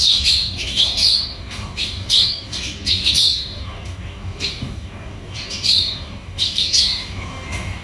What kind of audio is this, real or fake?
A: fake